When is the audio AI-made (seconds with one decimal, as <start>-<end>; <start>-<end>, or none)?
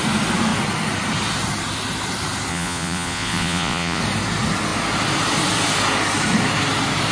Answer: 2.5-4.0